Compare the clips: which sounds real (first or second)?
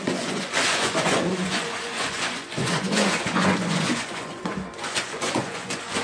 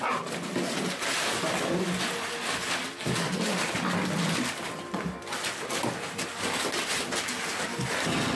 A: second